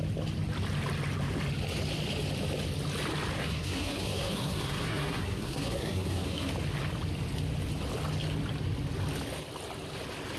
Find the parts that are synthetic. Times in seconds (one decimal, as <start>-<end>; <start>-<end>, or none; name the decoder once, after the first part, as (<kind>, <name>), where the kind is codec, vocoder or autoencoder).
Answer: 3.4-6.5 (codec, SNAC)